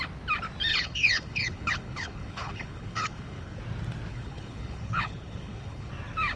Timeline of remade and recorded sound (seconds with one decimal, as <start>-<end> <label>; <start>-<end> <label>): 0.0-0.7 recorded; 0.7-3.6 remade; 3.6-4.1 recorded; 4.1-5.9 remade; 5.9-6.4 recorded